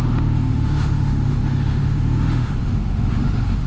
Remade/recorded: remade